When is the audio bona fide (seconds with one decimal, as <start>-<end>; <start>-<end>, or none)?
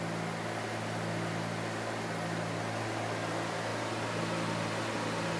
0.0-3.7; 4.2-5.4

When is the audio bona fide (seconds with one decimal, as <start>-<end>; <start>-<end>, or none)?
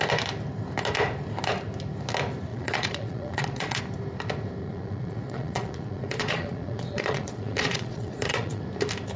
0.0-2.5; 3.8-4.6; 8.6-9.2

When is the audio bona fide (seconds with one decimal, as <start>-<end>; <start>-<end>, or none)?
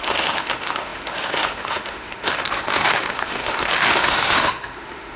none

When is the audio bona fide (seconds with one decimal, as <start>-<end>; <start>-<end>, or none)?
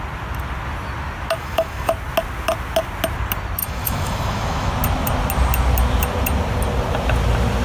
0.0-1.4; 1.9-3.6; 4.7-7.6